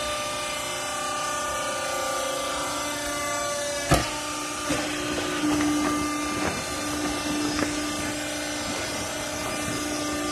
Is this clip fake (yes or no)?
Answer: no